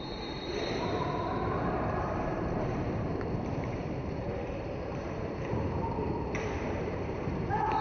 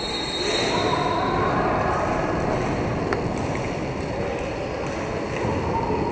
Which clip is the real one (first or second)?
second